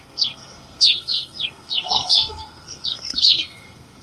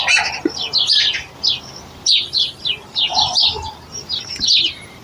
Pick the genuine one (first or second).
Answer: second